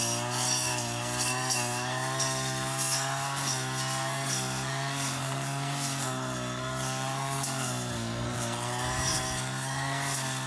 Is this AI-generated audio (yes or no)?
yes